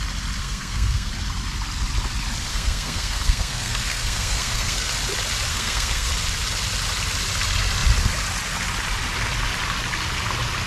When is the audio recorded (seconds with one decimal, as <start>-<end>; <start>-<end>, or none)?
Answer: 0.0-0.4; 1.1-2.5; 4.9-5.5; 6.1-10.7